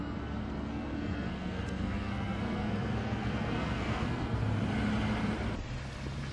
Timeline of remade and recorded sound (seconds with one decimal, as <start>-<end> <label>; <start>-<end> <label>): 0.0-4.4 remade; 4.4-6.3 recorded